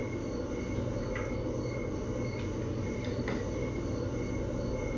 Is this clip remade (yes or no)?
no